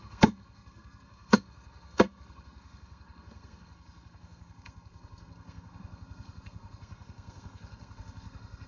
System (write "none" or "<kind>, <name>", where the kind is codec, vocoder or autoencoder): codec, SNAC